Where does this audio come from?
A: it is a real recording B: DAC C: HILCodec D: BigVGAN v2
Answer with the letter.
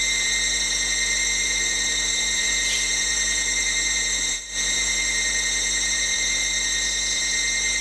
D